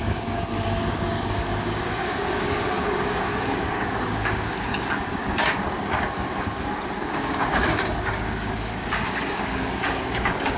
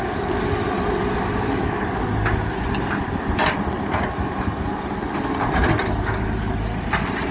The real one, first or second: second